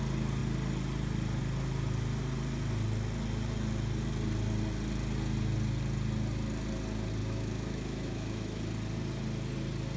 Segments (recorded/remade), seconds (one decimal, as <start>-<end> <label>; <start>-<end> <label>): 0.0-7.2 recorded; 7.2-8.6 remade; 8.6-10.0 recorded